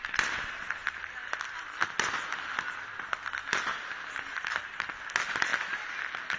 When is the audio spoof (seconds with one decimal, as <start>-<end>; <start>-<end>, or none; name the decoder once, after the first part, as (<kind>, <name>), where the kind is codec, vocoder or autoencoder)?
none